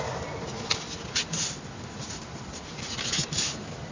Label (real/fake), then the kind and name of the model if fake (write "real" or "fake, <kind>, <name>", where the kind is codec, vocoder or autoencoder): real